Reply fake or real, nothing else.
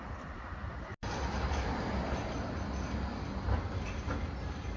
real